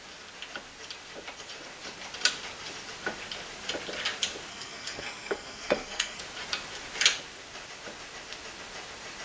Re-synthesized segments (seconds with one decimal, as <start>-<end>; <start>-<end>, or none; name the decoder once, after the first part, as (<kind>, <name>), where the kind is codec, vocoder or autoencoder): 4.5-6.2 (codec, SNAC)